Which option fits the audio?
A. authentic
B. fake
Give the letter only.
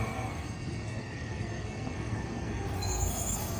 B